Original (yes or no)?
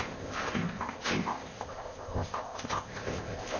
no